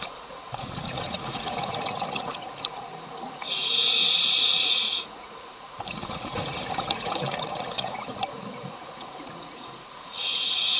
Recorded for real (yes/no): no